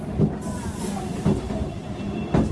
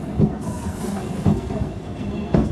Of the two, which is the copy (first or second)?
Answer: second